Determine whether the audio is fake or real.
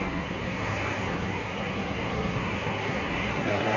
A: fake